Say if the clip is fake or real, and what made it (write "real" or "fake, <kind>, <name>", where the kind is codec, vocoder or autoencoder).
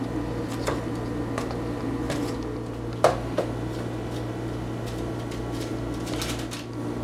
real